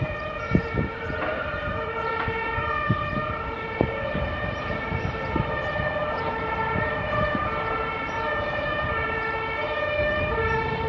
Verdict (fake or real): fake